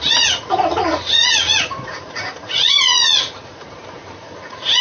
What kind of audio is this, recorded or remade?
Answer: remade